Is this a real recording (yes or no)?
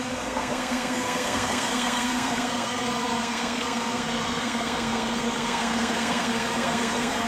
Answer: no